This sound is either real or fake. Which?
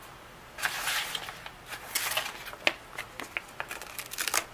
real